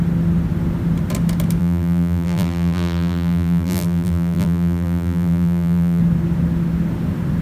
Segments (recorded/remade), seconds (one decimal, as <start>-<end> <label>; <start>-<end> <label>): 0.0-1.6 recorded; 1.6-6.0 remade; 6.0-7.4 recorded